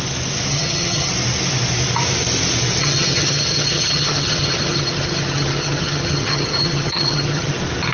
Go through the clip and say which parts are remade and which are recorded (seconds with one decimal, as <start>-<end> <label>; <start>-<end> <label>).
0.0-0.5 recorded; 0.5-1.1 remade; 1.1-2.8 recorded; 2.8-7.5 remade; 7.5-7.9 recorded